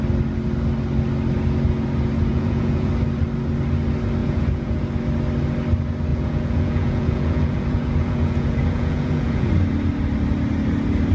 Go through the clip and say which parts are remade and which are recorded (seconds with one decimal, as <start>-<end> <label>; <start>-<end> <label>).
0.0-2.3 recorded; 2.3-2.9 remade; 2.9-4.2 recorded; 4.2-4.8 remade; 4.8-6.1 recorded; 6.1-9.5 remade; 9.5-11.1 recorded